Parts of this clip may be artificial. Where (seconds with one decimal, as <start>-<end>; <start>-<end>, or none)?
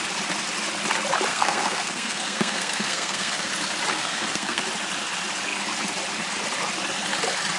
1.3-3.5; 3.9-4.6